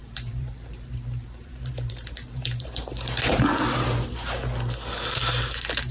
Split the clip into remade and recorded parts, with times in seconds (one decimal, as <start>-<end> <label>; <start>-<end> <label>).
0.0-3.5 remade; 3.5-5.9 recorded

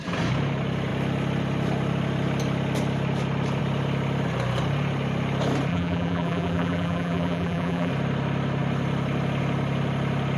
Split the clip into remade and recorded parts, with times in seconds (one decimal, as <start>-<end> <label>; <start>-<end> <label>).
0.0-5.7 recorded; 5.7-7.9 remade; 7.9-10.4 recorded

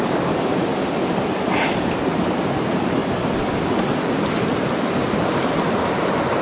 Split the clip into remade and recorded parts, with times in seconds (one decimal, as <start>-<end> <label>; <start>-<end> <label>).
0.0-3.0 remade; 3.0-4.3 recorded; 4.3-6.4 remade

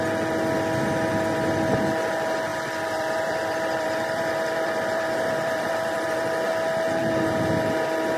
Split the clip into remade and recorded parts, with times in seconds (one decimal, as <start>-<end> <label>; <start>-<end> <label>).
0.0-2.5 recorded; 2.5-6.5 remade; 6.5-8.2 recorded

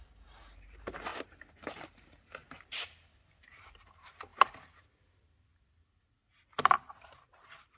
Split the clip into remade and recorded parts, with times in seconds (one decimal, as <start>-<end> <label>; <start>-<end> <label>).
0.0-4.3 remade; 4.3-6.6 recorded; 6.6-7.8 remade